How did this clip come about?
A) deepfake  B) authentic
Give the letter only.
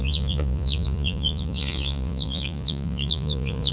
A